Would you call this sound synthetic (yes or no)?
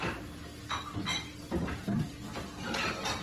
no